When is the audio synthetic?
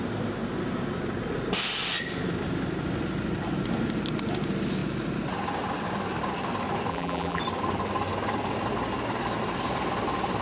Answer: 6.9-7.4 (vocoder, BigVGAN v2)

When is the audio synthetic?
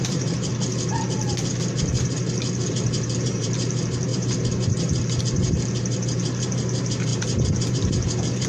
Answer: 0.0-0.5 (vocoder, BigVGAN v2); 2.7-8.5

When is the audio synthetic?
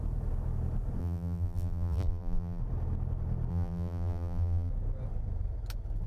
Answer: 1.0-2.6 (vocoder, BigVGAN v2); 3.5-4.7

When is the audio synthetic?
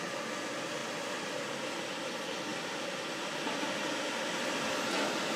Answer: 2.5-3.8 (vocoder, BigVGAN v2)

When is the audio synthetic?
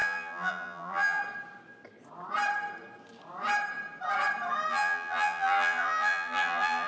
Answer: 0.0-1.2 (vocoder, BigVGAN v2); 4.7-6.9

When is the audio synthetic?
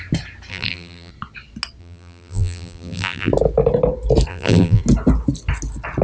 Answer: 0.5-1.1 (vocoder, BigVGAN v2); 1.8-3.3; 4.3-4.8